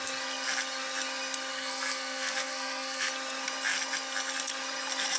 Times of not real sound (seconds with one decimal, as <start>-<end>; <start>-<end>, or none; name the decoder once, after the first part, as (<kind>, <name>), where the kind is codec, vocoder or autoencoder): 1.5-3.1 (codec, SNAC)